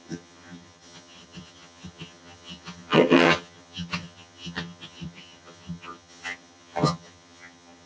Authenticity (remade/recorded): remade